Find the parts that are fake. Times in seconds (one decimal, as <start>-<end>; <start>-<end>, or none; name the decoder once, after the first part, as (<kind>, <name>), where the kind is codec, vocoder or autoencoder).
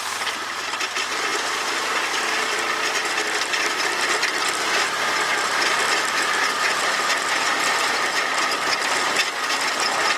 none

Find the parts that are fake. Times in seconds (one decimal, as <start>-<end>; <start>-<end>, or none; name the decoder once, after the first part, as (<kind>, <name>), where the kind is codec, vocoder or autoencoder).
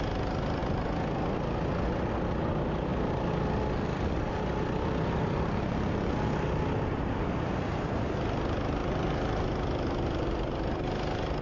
2.9-6.1 (vocoder, BigVGAN v2); 8.8-10.8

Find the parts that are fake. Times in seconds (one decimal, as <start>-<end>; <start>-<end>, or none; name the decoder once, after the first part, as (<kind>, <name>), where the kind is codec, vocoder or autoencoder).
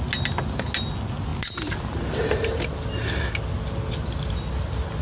none